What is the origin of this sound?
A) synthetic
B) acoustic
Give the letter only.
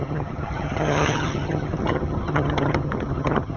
A